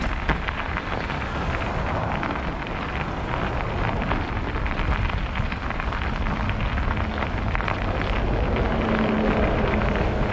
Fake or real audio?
real